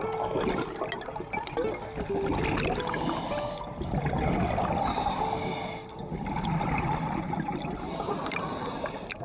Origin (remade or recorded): recorded